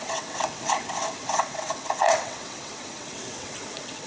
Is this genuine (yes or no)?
no